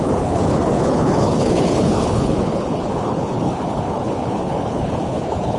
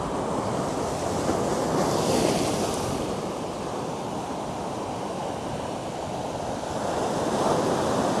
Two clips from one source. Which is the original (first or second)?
second